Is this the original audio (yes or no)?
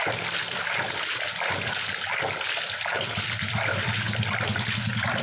yes